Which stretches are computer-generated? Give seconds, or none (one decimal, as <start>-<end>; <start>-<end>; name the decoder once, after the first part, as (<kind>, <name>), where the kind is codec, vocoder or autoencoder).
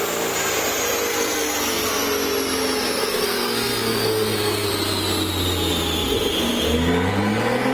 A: 1.1-1.9 (codec, SNAC); 3.1-4.7